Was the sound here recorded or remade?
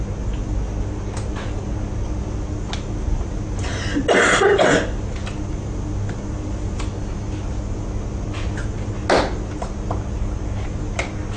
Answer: recorded